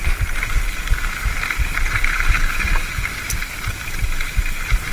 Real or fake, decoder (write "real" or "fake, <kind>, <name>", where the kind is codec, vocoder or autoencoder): real